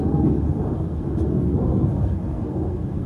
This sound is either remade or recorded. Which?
remade